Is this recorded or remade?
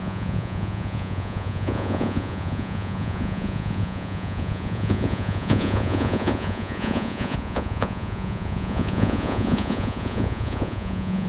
remade